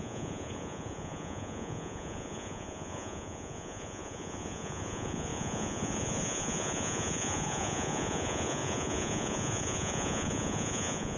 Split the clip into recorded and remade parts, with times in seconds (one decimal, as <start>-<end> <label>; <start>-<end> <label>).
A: 0.0-11.2 remade